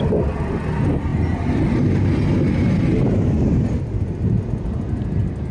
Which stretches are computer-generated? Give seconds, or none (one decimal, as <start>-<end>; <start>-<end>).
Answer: none